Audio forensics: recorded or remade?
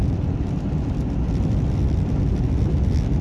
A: recorded